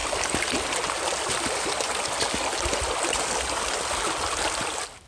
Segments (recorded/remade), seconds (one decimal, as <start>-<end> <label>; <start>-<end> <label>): 0.0-5.1 recorded